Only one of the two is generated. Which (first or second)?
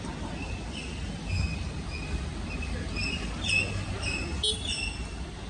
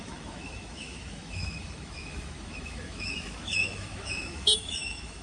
second